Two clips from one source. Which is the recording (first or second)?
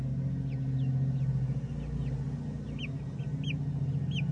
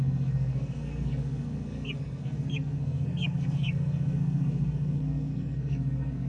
first